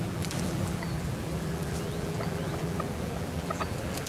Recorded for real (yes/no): no